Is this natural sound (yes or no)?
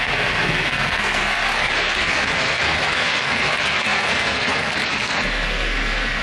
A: no